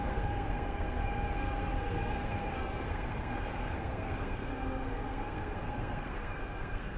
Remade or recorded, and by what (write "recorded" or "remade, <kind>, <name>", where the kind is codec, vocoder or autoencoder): remade, codec, SNAC